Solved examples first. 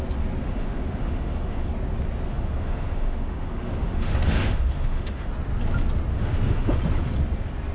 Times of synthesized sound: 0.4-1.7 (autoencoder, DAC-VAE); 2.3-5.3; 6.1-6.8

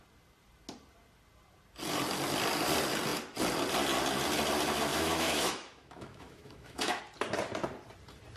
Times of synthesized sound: 4.9-7.0 (autoencoder, DAC-VAE)

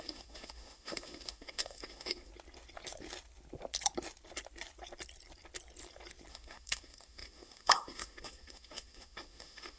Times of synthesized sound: 0.0-2.3 (autoencoder, DAC-VAE); 6.3-9.8

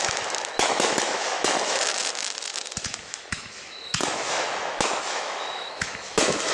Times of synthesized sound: 0.0-6.5 (autoencoder, DAC-VAE)

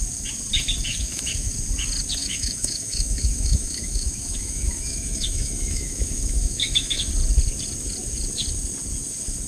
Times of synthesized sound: 0.9-1.5 (autoencoder, DAC-VAE); 2.2-7.1

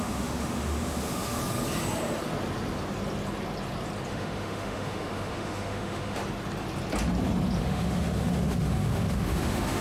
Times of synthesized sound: 0.0-1.4 (autoencoder, DAC-VAE); 4.1-6.2; 7.6-9.8